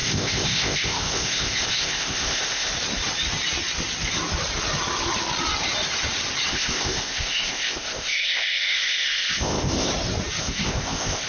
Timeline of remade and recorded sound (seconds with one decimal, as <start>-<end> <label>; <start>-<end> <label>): 0.0-2.7 remade; 2.7-6.5 recorded; 6.5-9.9 remade; 9.9-10.4 recorded; 10.4-11.3 remade